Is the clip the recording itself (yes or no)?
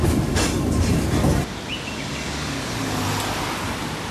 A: yes